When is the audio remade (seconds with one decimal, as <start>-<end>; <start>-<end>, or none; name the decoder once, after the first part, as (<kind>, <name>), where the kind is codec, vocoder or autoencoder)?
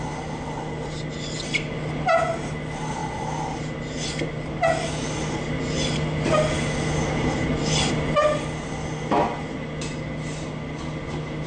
none